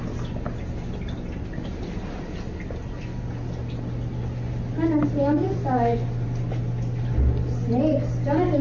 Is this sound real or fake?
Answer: real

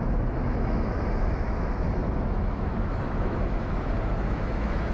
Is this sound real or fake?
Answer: fake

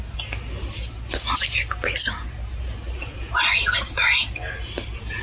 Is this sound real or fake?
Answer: real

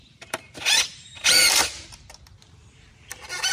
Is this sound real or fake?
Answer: fake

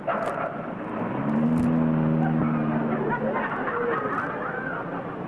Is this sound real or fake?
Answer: real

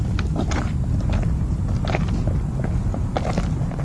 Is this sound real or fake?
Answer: real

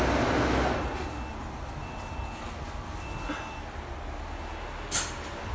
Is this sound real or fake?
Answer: real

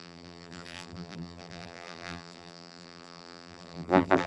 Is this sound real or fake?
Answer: fake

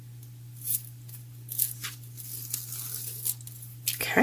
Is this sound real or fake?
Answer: real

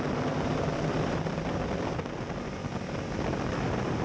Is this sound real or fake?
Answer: real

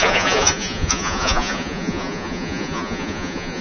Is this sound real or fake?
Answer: fake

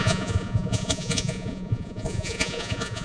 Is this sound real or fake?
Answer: fake